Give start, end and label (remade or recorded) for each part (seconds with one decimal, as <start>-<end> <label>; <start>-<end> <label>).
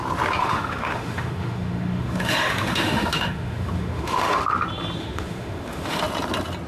0.0-0.4 recorded; 0.4-4.4 remade; 4.4-5.0 recorded; 5.0-6.0 remade; 6.0-6.7 recorded